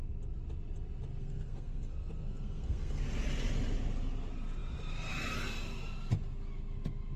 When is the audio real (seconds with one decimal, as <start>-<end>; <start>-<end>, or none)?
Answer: 0.0-1.2; 3.0-7.2